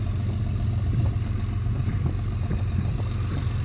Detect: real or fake real